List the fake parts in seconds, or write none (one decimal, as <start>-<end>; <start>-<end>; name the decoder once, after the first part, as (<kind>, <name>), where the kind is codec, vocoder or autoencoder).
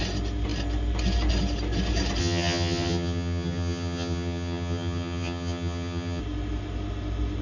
2.2-6.2 (vocoder, HiFi-GAN)